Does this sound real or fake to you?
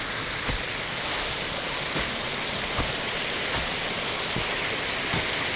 real